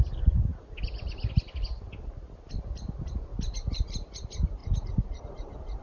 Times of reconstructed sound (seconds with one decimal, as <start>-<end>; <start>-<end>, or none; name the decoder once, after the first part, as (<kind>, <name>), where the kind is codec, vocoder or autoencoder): none

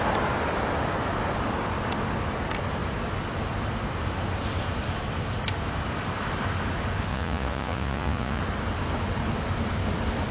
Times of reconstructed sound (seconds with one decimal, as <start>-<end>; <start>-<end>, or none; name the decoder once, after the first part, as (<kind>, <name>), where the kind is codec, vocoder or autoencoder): 7.1-8.4 (vocoder, Vocos)

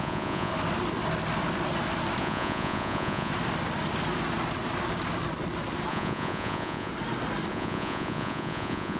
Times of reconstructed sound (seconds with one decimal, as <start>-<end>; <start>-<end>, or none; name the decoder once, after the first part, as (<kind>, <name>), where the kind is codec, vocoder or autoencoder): 0.0-0.5 (vocoder, Vocos); 2.2-3.3; 5.9-6.9; 7.5-9.0